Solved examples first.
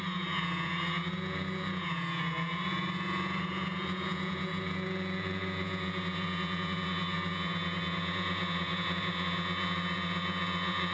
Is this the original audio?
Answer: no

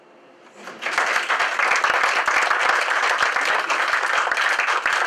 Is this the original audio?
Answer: yes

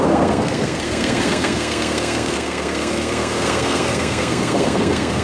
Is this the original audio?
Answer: no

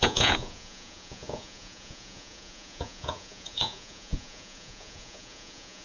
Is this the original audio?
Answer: no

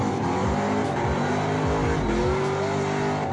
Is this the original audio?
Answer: yes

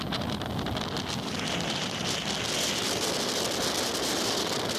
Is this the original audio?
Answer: yes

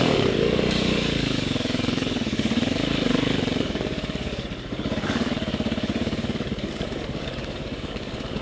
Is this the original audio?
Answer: no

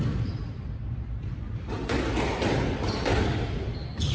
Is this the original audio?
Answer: yes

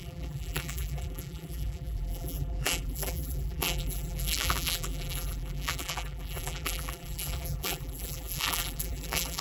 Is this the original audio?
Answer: no